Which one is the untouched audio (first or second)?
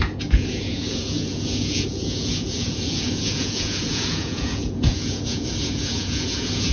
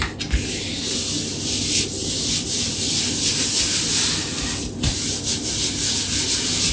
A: second